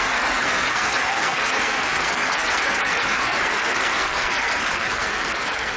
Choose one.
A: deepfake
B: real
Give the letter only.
A